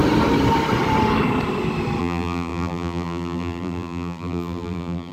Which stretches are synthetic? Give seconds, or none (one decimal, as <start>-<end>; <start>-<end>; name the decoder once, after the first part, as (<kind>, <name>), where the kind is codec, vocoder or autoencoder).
2.0-5.1 (vocoder, BigVGAN v2)